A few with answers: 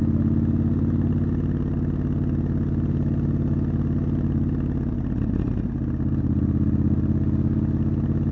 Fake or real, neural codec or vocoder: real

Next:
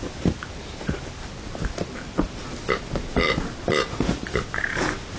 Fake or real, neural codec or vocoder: real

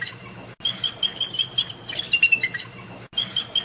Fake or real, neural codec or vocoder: real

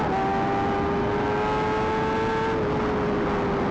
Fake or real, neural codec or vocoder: real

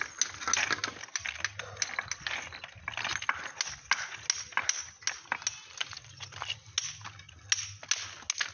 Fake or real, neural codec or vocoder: real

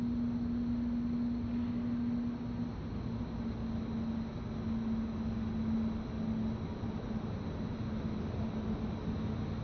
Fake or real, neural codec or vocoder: real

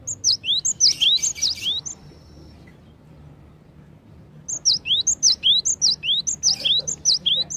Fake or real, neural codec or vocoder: real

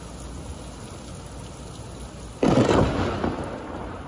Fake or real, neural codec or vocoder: real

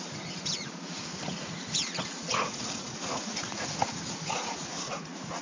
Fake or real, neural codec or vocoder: fake, vocoder, Vocos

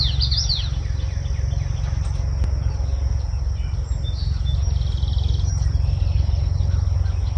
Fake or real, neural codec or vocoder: real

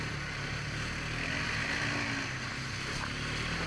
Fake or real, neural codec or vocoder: real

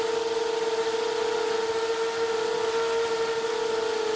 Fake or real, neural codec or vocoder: real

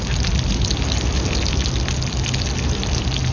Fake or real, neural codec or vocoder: real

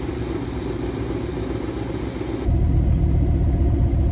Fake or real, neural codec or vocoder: real